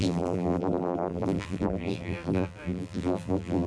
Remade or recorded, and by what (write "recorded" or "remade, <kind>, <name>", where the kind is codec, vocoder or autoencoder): remade, vocoder, BigVGAN v2